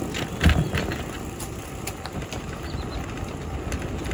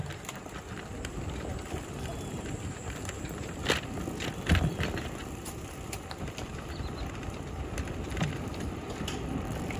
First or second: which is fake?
second